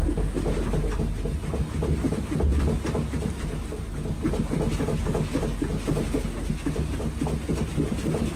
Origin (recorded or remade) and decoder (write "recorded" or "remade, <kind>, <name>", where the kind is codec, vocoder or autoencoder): recorded